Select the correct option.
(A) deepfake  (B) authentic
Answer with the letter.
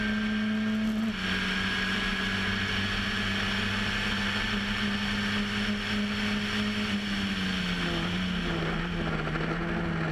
B